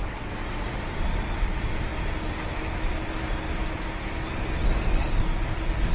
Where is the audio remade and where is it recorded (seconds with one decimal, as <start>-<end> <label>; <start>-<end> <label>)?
0.0-0.8 remade; 0.8-5.9 recorded